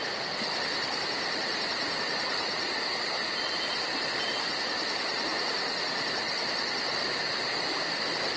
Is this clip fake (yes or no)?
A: no